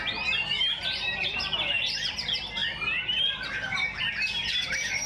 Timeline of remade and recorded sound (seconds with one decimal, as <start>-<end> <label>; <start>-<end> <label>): 0.0-0.4 recorded; 0.4-2.1 remade; 2.1-2.6 recorded; 2.6-4.0 remade; 4.0-4.4 recorded; 4.4-5.1 remade